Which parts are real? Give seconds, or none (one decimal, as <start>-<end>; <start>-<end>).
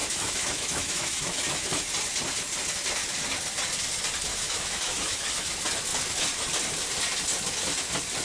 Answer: 1.7-4.3; 5.5-8.2